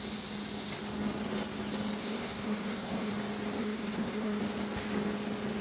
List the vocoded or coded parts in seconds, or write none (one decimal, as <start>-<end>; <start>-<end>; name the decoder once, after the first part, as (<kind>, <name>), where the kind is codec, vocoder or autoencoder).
2.0-3.1 (codec, SNAC); 3.6-4.4